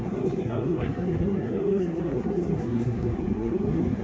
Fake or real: fake